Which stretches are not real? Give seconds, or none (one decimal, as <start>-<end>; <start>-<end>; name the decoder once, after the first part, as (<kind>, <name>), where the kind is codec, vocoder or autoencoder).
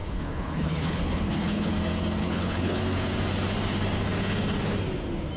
0.0-1.7 (codec, HILCodec); 2.2-2.8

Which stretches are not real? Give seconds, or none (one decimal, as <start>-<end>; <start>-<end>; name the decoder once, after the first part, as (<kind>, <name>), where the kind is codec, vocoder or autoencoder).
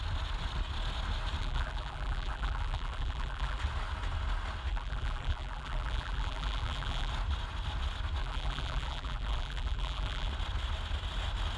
1.4-3.6 (vocoder, BigVGAN v2); 4.7-7.1; 8.2-10.3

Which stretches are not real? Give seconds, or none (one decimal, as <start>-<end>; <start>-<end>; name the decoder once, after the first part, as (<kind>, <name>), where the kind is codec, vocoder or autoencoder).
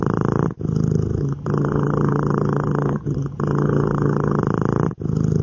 1.2-4.4 (vocoder, HiFi-GAN)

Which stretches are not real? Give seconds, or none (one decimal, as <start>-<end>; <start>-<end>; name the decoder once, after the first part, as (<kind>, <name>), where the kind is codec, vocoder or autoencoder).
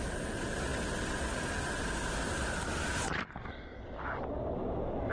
none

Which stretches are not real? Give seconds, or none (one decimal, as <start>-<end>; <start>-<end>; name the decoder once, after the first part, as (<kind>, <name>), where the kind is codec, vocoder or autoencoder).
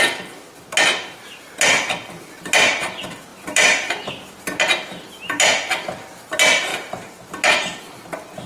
6.7-7.3 (vocoder, BigVGAN v2)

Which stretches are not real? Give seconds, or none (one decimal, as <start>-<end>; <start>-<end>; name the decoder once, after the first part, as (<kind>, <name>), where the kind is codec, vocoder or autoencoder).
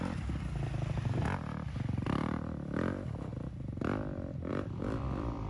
0.0-5.5 (vocoder, BigVGAN v2)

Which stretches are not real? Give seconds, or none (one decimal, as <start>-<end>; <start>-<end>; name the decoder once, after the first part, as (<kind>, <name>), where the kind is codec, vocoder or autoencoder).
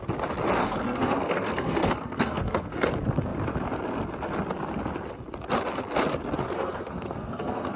0.6-2.9 (codec, SNAC); 6.4-7.8